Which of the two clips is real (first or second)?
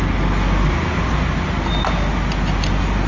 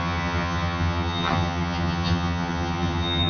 first